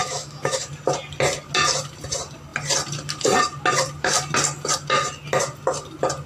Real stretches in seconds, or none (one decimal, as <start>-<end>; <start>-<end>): 0.7-6.3